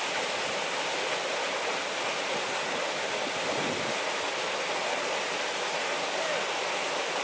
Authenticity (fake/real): real